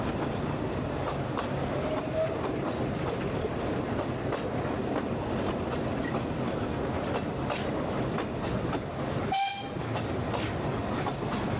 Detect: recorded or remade recorded